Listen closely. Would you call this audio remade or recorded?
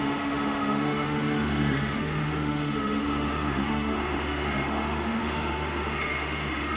remade